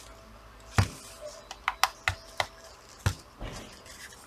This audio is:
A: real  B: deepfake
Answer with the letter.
A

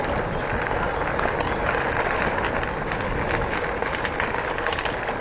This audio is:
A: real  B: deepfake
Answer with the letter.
A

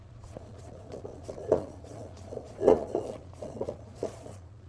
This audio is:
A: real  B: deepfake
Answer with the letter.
B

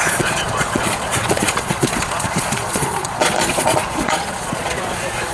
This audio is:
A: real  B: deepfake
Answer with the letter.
B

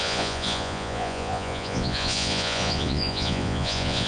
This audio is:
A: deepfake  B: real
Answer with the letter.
A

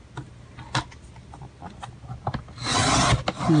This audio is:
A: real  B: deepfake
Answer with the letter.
A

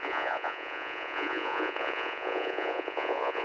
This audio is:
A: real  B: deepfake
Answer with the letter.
B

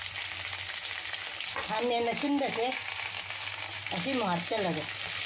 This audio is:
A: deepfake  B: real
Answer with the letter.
B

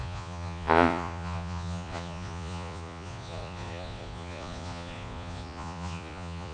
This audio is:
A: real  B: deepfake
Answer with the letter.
B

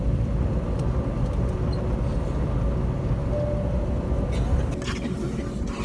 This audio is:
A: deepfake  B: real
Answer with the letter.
B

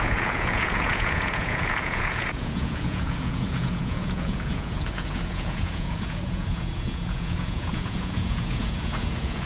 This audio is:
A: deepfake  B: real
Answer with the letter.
A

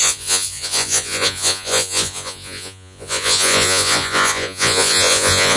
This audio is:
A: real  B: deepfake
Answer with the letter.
B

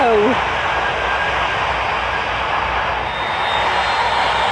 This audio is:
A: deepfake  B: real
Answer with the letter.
B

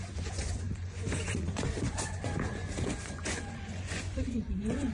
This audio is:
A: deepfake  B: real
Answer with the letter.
A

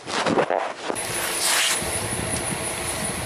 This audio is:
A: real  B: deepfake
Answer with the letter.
A